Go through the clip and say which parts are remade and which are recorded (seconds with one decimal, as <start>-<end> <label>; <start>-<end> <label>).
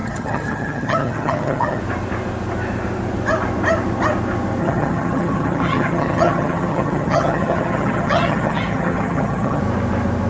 0.0-1.8 remade; 1.8-4.6 recorded; 4.6-9.6 remade; 9.6-10.3 recorded